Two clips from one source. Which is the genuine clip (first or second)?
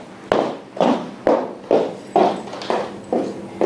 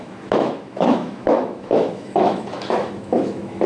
first